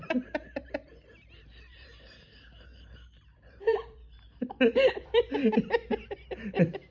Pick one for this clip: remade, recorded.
remade